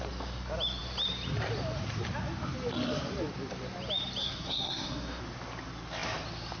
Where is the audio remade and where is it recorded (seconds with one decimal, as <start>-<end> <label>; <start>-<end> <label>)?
0.0-4.2 recorded; 4.2-5.2 remade; 5.2-6.6 recorded